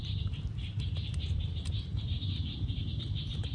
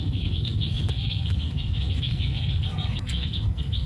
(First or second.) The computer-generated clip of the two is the second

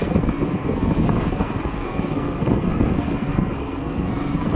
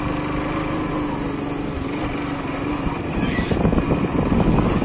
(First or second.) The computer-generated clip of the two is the first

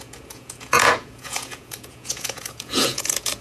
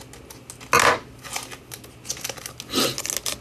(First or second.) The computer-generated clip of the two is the first